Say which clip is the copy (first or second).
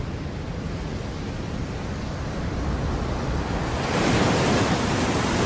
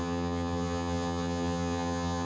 second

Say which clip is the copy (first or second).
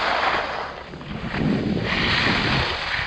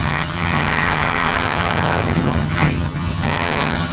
second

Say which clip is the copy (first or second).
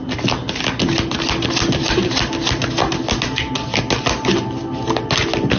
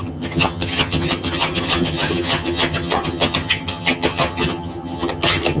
second